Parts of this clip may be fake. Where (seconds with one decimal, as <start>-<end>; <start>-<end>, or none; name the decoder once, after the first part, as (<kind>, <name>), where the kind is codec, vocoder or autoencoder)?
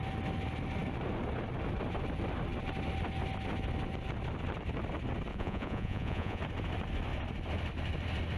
5.3-6.4 (vocoder, Vocos)